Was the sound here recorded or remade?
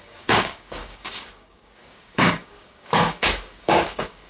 remade